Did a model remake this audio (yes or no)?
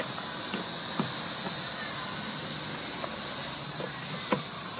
no